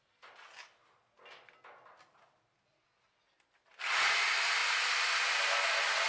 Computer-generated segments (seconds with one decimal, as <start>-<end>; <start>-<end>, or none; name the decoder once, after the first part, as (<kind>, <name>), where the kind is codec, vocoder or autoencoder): none